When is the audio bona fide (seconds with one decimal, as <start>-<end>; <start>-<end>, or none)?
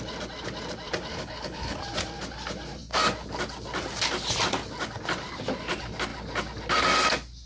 0.0-1.1; 1.8-7.5